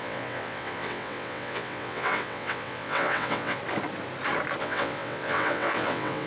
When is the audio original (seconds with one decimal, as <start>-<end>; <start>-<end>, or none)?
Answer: 3.6-4.6